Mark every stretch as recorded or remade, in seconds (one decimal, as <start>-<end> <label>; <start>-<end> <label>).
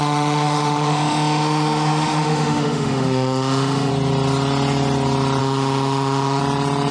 0.0-3.9 remade; 3.9-5.4 recorded; 5.4-6.4 remade; 6.4-6.9 recorded